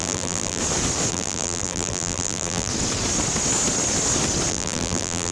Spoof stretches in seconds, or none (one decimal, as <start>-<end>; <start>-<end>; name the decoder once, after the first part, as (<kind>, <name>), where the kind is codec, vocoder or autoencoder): 0.0-0.6 (vocoder, BigVGAN v2); 1.1-2.7; 4.5-5.3

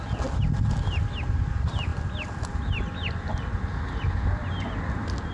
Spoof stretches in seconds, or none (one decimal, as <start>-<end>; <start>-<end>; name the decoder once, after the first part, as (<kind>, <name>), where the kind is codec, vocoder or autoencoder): none

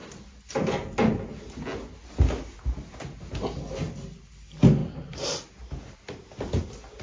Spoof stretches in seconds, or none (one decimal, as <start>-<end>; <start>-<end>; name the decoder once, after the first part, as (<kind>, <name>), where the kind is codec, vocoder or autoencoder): none

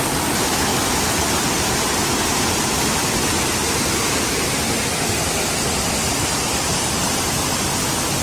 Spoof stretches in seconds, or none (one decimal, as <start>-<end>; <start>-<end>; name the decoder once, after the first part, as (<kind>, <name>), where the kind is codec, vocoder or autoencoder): none